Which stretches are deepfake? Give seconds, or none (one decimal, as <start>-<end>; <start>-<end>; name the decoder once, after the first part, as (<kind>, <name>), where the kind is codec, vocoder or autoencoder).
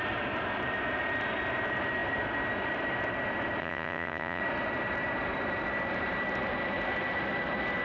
3.6-4.4 (vocoder, HiFi-GAN)